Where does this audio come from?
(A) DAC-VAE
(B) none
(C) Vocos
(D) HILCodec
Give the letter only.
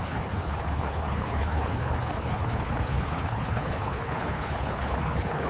D